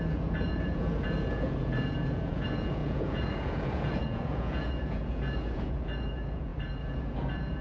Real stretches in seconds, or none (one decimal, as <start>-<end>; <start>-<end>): none